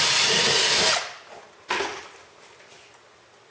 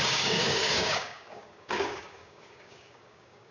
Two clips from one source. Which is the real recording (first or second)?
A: first